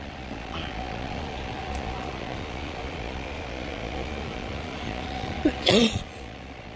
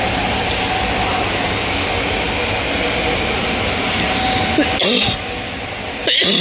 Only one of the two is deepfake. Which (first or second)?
first